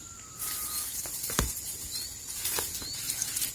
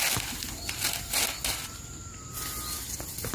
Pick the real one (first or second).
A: second